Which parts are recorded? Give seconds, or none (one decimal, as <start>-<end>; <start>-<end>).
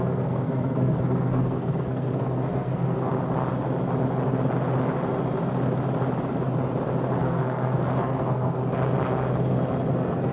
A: 3.1-7.2; 8.6-9.9